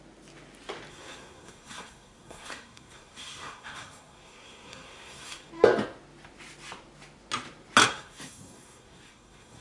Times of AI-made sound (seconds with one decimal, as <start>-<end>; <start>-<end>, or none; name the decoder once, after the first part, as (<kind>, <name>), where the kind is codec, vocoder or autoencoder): 0.9-5.5 (codec, SNAC); 7.9-9.6